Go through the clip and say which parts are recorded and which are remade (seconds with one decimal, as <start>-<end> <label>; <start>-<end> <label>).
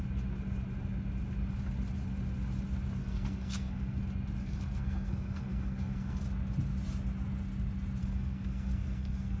0.0-3.0 recorded; 3.0-4.0 remade; 4.0-4.4 recorded; 4.4-6.2 remade; 6.2-8.0 recorded; 8.0-9.4 remade